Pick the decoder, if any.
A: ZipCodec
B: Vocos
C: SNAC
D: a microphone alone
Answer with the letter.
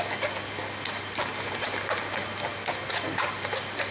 D